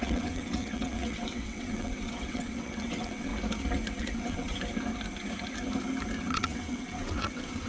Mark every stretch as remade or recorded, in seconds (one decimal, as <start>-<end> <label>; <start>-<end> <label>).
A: 0.0-3.3 remade; 3.3-4.0 recorded; 4.0-4.5 remade; 4.5-6.2 recorded; 6.2-7.7 remade